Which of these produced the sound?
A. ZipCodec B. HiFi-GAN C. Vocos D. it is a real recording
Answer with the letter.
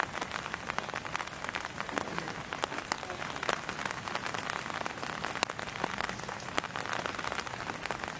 D